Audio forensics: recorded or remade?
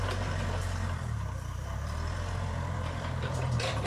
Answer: remade